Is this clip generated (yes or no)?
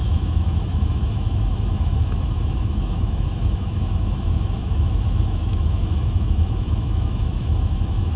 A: yes